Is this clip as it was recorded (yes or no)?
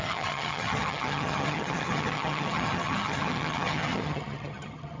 no